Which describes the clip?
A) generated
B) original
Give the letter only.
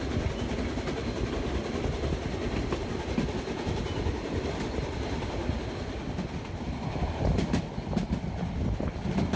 B